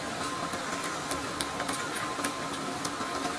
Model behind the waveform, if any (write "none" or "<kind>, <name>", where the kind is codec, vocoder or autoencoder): none